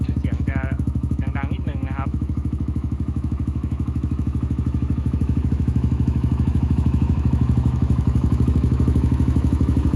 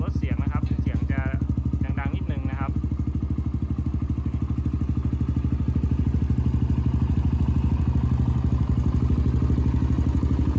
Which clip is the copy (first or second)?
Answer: first